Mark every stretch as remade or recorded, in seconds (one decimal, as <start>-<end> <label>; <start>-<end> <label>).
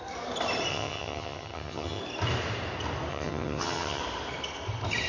0.0-0.7 recorded; 0.7-2.0 remade; 2.0-3.1 recorded; 3.1-4.0 remade; 4.0-5.1 recorded